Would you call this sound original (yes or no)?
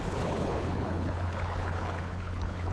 no